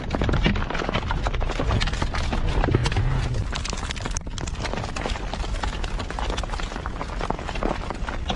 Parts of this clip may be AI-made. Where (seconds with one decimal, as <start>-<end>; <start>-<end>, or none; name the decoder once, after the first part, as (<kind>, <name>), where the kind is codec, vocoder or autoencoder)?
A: none